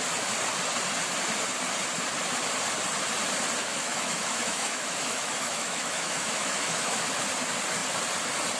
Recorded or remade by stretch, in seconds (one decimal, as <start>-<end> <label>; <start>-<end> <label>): 0.0-3.7 recorded; 3.7-7.1 remade; 7.1-8.6 recorded

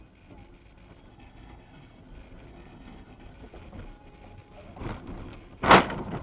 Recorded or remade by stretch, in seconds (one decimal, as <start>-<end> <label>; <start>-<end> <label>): 0.0-1.1 recorded; 1.1-2.0 remade; 2.0-2.5 recorded; 2.5-3.3 remade; 3.3-6.2 recorded